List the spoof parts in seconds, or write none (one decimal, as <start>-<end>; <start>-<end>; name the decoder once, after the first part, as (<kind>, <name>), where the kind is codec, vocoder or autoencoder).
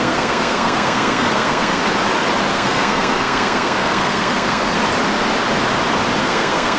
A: 0.0-1.8 (codec, SNAC); 2.5-4.8; 6.2-6.8